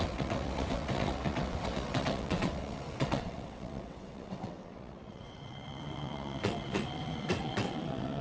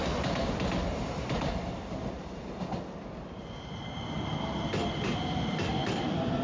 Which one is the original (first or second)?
second